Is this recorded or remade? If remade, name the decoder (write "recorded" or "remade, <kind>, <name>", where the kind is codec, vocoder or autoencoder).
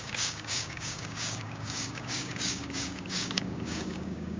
remade, codec, DAC